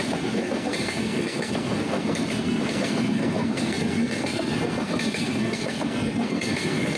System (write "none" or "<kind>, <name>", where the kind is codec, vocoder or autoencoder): codec, SNAC